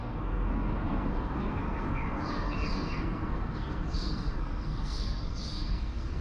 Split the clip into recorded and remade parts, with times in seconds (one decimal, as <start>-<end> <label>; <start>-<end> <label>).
0.0-6.2 remade